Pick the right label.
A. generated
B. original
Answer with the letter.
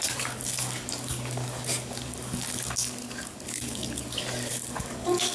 A